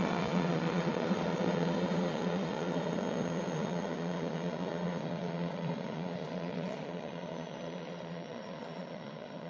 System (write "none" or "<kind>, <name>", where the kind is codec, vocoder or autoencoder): vocoder, Vocos